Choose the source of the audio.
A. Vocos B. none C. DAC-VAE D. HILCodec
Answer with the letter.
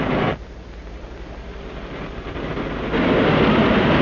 B